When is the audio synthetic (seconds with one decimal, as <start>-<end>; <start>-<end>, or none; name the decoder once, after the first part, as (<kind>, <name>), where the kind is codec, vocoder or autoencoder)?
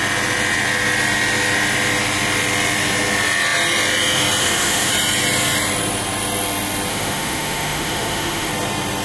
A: 4.4-4.9 (autoencoder, DAC-VAE); 6.9-8.5